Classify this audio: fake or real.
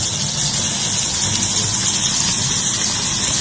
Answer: real